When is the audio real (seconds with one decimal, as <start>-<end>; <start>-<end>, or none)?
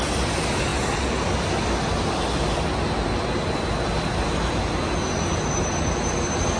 0.0-6.6